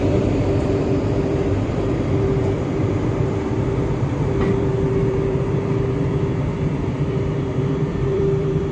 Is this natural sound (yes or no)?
no